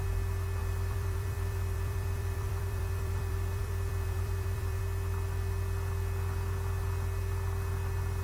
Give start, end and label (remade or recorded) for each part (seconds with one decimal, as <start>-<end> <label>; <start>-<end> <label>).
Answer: 0.0-0.6 recorded; 0.6-4.8 remade; 4.8-8.2 recorded